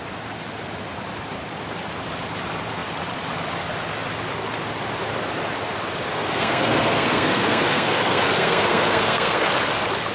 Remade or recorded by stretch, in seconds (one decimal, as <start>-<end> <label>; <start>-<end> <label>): 0.0-6.1 recorded; 6.1-9.5 remade; 9.5-10.1 recorded